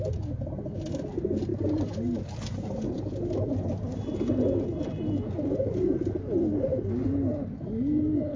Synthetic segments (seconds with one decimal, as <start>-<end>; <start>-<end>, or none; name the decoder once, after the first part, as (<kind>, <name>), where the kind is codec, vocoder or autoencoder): none